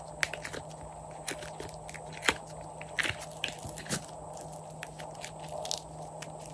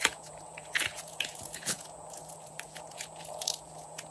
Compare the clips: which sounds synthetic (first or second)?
second